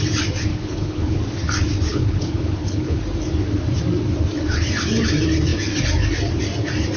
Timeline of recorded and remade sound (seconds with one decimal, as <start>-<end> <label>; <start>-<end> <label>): 0.0-0.5 recorded; 0.5-1.2 remade; 1.2-1.9 recorded; 1.9-3.0 remade; 3.0-7.0 recorded